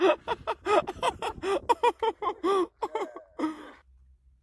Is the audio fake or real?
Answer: real